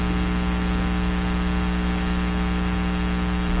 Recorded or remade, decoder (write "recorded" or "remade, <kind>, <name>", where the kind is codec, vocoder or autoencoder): recorded